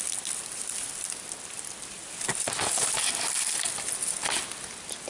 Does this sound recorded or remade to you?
recorded